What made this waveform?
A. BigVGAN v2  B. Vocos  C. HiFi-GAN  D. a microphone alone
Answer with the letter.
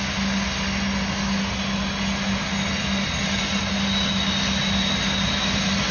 D